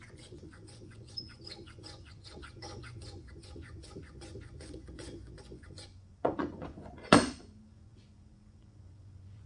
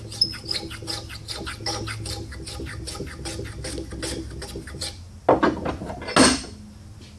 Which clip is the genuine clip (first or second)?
second